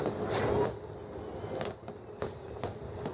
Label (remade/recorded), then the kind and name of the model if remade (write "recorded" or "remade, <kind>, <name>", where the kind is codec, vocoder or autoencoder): recorded